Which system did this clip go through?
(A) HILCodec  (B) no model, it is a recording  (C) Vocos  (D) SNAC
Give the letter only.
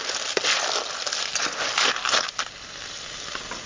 B